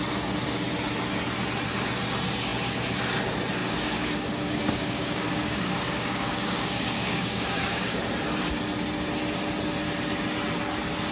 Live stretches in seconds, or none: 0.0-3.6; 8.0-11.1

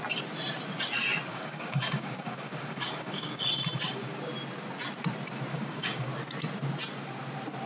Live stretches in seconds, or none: 0.0-1.3; 3.5-5.5; 6.1-7.7

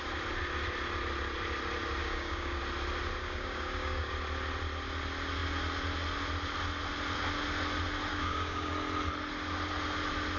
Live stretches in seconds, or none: 0.0-2.0; 2.6-3.2; 4.1-8.1; 8.7-10.4

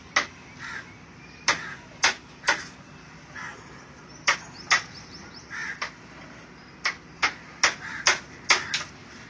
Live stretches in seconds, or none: 0.0-9.3

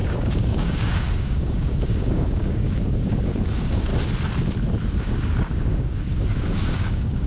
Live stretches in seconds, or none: 3.9-5.0